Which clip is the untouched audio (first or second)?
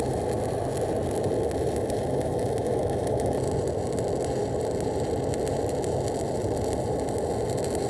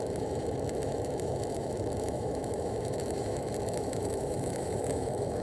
first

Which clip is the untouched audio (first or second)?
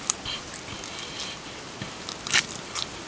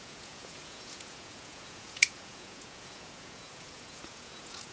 first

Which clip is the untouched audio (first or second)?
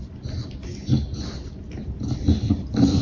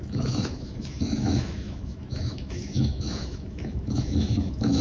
first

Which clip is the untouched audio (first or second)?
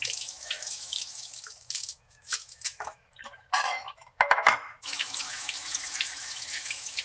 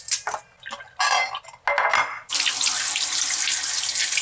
second